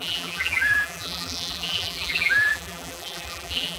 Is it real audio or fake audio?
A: fake